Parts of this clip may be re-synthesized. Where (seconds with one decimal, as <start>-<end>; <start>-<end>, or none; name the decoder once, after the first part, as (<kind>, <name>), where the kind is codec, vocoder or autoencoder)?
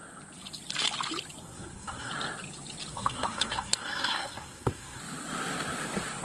1.4-2.1 (codec, SNAC); 2.9-5.0